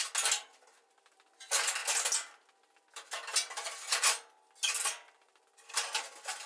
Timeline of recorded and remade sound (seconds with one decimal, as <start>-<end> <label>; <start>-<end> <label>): 0.0-6.5 recorded